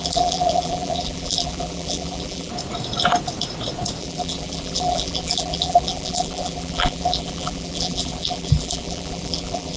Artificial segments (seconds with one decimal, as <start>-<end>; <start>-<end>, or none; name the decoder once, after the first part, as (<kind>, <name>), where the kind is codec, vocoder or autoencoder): 0.0-2.5 (vocoder, BigVGAN v2); 4.0-9.8